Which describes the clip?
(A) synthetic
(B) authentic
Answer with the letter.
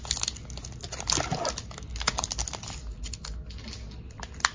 B